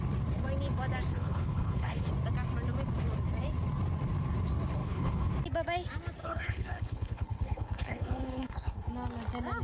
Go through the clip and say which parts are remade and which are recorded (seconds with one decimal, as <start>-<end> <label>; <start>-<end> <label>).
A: 0.0-1.1 recorded; 1.1-2.1 remade; 2.1-4.8 recorded; 4.8-5.3 remade; 5.3-6.2 recorded; 6.2-8.9 remade; 8.9-9.6 recorded